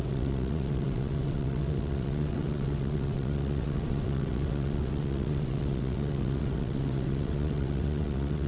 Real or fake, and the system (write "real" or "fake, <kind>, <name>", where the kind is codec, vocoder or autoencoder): fake, vocoder, WaveNeXt